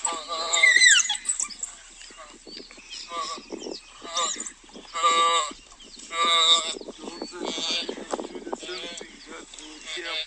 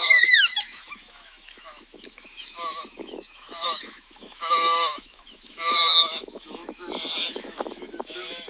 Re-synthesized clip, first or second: second